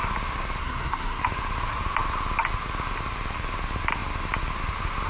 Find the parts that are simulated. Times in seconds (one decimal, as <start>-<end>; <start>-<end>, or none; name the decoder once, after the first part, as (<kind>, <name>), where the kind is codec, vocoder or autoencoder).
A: 0.6-1.2 (codec, SNAC)